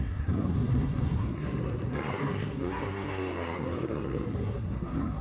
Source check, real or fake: fake